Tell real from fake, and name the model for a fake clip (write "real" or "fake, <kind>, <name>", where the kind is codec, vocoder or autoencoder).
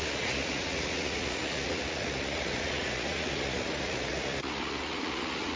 fake, vocoder, Vocos